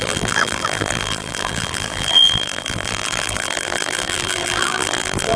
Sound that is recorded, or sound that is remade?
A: remade